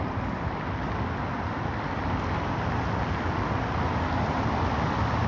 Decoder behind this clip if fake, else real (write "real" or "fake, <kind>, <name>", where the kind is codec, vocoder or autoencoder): real